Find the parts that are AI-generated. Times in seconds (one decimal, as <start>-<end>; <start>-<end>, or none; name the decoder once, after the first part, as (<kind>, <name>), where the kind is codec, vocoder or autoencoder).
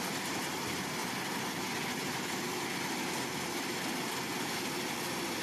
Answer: none